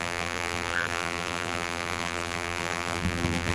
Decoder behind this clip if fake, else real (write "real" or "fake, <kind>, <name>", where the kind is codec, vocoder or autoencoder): fake, vocoder, BigVGAN v2